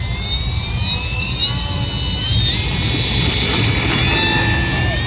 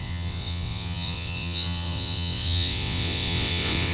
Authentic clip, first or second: first